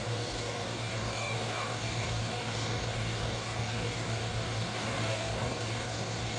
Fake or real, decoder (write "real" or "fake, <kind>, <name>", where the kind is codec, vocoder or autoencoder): fake, codec, DAC